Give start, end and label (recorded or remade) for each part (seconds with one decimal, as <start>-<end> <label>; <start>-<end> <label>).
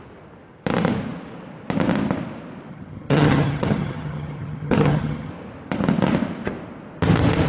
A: 0.0-2.7 recorded; 2.7-5.3 remade; 5.3-7.5 recorded